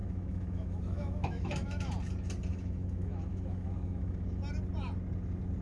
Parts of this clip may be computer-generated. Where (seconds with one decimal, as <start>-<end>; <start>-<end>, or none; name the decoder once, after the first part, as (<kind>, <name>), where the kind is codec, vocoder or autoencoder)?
0.0-1.9 (autoencoder, DAC-VAE); 2.5-4.4